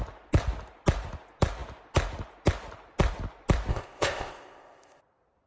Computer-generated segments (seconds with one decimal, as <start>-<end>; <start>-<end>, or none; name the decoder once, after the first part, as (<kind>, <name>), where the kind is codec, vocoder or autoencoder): 3.7-5.0 (codec, ZipCodec)